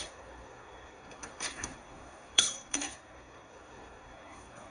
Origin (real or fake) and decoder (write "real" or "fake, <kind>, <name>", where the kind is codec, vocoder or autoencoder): fake, codec, SNAC